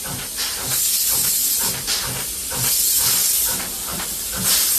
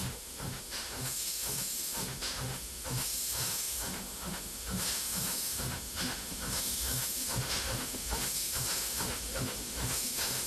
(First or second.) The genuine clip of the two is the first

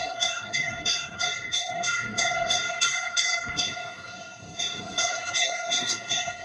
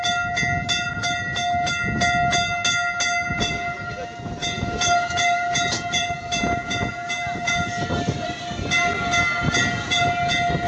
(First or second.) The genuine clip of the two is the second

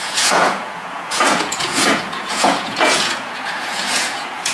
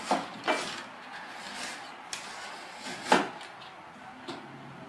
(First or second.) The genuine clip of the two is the second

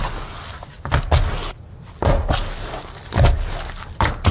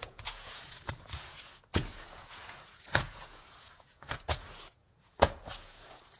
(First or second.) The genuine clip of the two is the first